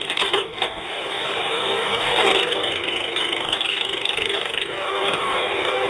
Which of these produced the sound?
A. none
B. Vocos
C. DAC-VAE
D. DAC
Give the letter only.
D